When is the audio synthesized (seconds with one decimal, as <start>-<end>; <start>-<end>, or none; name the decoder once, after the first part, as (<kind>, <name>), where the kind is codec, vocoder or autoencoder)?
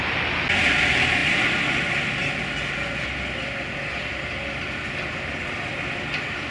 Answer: none